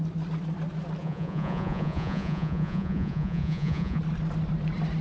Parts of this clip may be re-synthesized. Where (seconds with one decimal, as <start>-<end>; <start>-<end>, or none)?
1.0-4.0